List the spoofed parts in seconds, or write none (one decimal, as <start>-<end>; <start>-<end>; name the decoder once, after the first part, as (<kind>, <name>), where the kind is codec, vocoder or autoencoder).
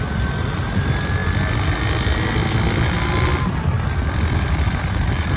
none